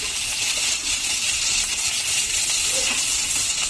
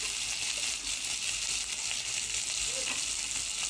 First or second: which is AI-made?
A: first